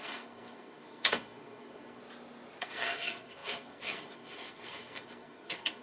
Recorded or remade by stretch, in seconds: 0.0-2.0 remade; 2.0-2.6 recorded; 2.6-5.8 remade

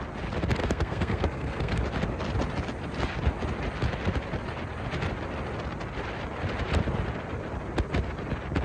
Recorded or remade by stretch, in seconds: 0.0-0.6 recorded; 0.6-1.8 remade; 1.8-8.6 recorded

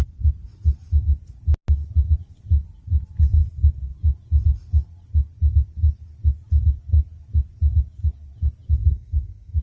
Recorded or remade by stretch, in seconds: 0.0-8.8 recorded; 8.8-9.6 remade

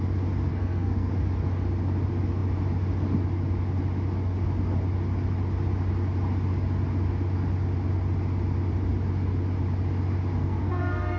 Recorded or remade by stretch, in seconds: 0.0-0.5 recorded; 0.5-1.1 remade; 1.1-10.4 recorded; 10.4-11.2 remade

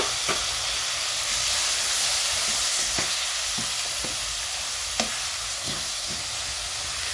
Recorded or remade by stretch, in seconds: 0.0-2.7 recorded; 2.7-3.4 remade; 3.4-5.5 recorded; 5.5-6.2 remade; 6.2-7.1 recorded

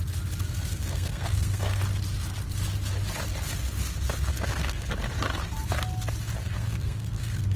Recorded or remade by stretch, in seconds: 0.0-0.7 recorded; 0.7-1.8 remade; 1.8-4.3 recorded; 4.3-4.9 remade; 4.9-6.4 recorded; 6.4-7.6 remade

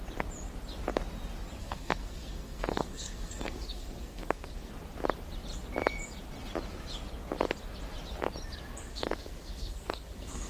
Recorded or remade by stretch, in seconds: 0.0-1.6 recorded; 1.6-4.7 remade; 4.7-8.9 recorded; 8.9-10.5 remade